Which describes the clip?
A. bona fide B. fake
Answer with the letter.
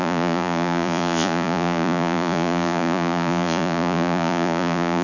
B